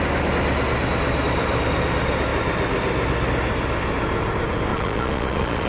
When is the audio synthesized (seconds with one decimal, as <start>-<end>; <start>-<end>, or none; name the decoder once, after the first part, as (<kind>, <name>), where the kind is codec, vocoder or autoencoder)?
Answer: 4.7-5.7 (vocoder, Vocos)